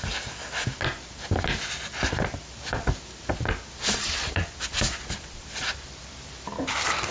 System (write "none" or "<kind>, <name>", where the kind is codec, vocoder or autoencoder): none